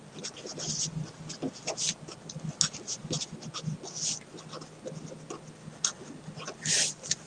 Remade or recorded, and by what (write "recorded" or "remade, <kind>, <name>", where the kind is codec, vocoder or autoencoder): recorded